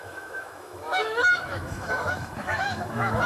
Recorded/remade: remade